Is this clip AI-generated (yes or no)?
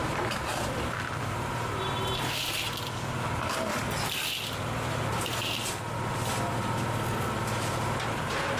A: no